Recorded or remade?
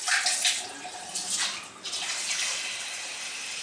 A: recorded